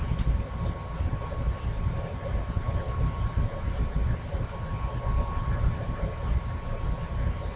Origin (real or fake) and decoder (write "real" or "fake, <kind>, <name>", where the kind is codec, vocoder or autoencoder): real